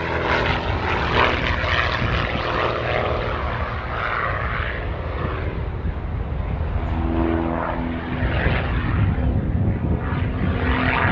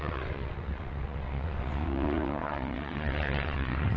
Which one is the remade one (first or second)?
second